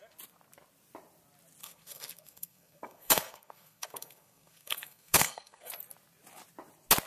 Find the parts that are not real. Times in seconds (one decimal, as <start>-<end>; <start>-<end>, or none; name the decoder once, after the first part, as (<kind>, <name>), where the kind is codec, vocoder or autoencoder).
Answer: 1.6-5.7 (codec, SNAC)